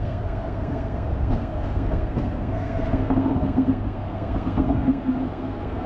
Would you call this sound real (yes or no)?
no